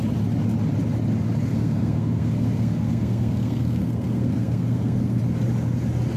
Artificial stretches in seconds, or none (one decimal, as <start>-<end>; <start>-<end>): 1.5-5.2